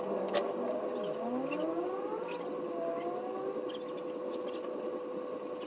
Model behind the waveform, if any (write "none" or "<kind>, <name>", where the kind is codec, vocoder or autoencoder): none